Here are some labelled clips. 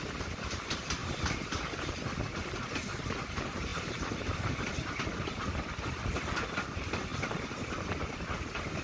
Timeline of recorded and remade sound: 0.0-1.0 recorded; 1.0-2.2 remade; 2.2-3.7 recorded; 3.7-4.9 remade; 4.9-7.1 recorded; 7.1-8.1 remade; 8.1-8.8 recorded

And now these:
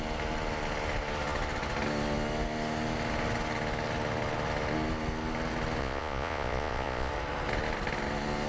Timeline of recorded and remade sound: 0.0-5.8 recorded; 5.8-7.1 remade; 7.1-8.5 recorded

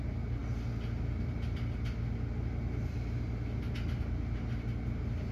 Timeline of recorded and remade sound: 0.0-5.3 recorded

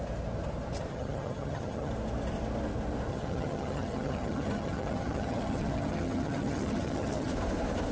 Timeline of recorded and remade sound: 0.0-0.9 recorded; 0.9-1.9 remade; 1.9-3.1 recorded; 3.1-7.3 remade; 7.3-7.9 recorded

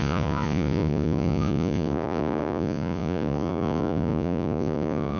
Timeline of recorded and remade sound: 0.0-5.2 remade

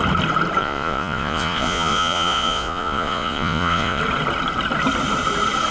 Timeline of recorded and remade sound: 0.0-0.6 recorded; 0.6-4.0 remade; 4.0-5.7 recorded

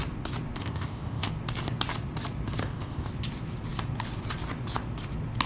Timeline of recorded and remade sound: 0.0-0.6 recorded; 0.6-1.3 remade; 1.3-2.6 recorded; 2.6-3.1 remade; 3.1-5.5 recorded